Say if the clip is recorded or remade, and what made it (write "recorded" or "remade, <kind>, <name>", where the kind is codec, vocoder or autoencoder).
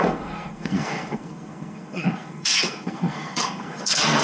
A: remade, codec, SNAC